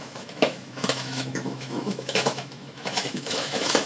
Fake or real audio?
fake